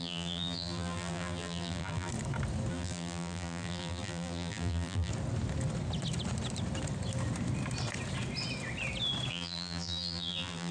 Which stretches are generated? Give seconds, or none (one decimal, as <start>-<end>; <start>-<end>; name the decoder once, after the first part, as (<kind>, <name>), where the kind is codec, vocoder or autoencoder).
0.0-2.1 (vocoder, BigVGAN v2); 2.7-5.1; 9.3-10.7